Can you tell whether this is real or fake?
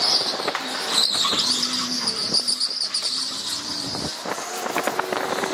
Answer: real